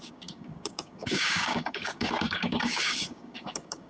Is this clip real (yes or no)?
no